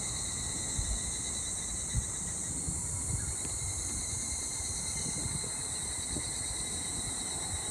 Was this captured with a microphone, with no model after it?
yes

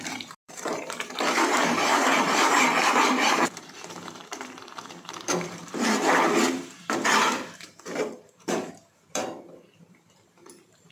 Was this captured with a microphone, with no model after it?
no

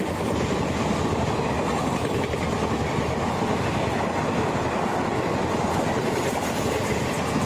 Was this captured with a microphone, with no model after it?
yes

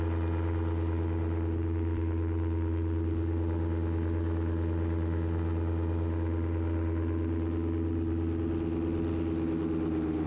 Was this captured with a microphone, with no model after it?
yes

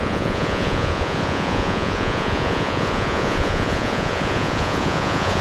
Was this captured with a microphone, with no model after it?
no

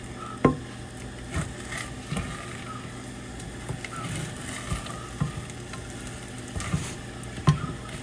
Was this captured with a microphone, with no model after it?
yes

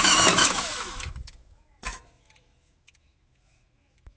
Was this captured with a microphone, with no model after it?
no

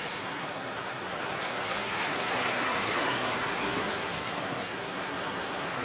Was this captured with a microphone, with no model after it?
no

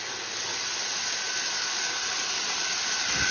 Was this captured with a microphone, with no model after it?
yes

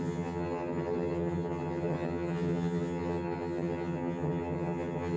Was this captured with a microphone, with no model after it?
no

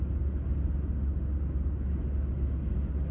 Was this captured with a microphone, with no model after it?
yes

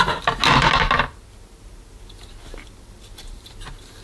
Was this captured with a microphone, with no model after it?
yes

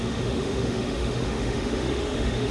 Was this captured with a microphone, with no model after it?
no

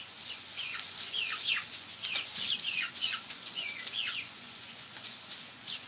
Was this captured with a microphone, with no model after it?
no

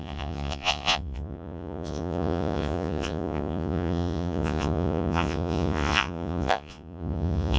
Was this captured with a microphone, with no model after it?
no